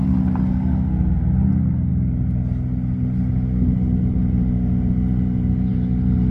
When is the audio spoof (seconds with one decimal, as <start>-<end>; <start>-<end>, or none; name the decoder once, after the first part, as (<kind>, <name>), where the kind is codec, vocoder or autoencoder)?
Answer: 0.5-1.5 (codec, SNAC)